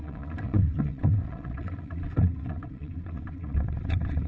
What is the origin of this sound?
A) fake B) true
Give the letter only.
A